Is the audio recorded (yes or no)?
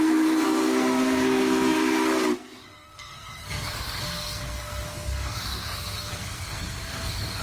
no